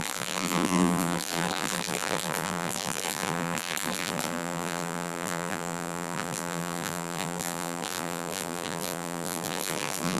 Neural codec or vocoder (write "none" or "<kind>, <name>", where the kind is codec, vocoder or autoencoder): vocoder, BigVGAN v2